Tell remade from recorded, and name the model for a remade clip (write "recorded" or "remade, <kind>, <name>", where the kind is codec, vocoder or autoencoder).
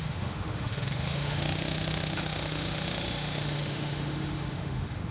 remade, autoencoder, DAC-VAE